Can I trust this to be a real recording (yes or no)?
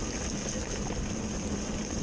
yes